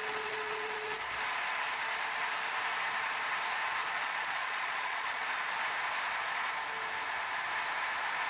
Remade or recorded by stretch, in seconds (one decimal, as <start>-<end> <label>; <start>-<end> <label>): 0.0-1.1 remade; 1.1-3.8 recorded; 3.8-5.2 remade; 5.2-8.3 recorded